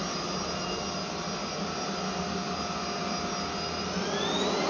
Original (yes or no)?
yes